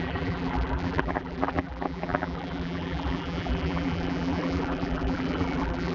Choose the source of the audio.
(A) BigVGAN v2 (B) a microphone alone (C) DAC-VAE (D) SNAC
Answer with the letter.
A